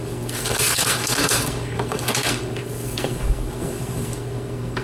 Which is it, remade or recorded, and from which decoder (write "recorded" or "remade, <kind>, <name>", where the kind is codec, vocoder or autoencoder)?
remade, codec, SNAC